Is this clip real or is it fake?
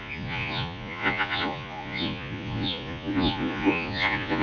fake